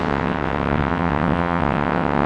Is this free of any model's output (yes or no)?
no